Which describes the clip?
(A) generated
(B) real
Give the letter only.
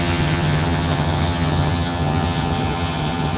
A